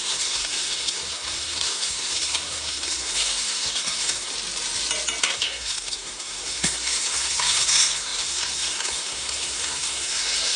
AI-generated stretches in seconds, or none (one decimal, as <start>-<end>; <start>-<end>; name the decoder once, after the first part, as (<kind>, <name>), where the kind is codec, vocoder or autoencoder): 0.0-4.3 (codec, SNAC); 5.2-10.6